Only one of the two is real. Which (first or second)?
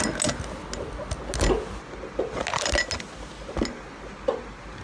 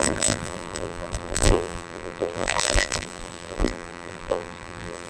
first